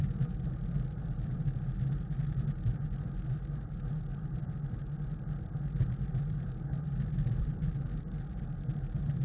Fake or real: real